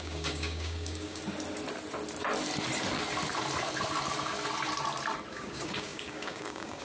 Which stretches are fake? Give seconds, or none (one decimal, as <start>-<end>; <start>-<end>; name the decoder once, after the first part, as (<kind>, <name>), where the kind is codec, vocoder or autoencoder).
0.0-1.2 (codec, DAC); 5.3-6.8